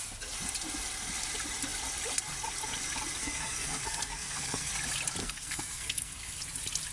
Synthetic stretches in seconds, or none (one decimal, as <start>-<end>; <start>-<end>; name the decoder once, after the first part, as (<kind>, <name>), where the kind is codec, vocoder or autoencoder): 3.2-4.7 (codec, SNAC); 5.2-6.4